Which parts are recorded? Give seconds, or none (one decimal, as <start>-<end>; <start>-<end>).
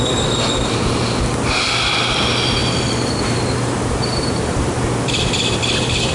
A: 0.0-2.6; 4.7-6.1